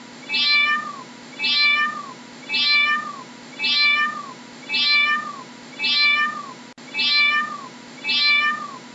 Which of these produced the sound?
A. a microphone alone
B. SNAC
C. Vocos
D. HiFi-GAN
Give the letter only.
A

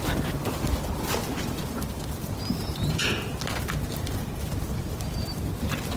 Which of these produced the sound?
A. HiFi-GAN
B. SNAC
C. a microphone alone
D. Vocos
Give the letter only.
C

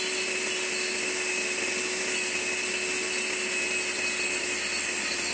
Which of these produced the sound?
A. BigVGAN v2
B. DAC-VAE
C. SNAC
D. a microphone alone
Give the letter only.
D